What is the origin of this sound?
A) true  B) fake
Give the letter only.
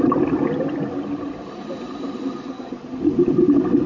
A